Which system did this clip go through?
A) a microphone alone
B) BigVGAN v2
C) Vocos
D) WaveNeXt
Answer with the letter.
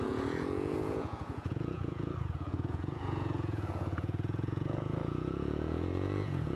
C